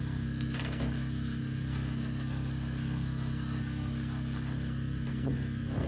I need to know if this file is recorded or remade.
remade